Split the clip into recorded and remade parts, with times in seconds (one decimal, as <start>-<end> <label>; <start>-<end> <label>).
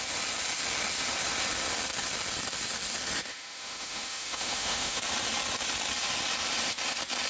0.0-3.3 recorded; 3.3-5.0 remade; 5.0-7.3 recorded